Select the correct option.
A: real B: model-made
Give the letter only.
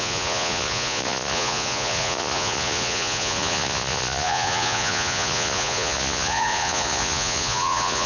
B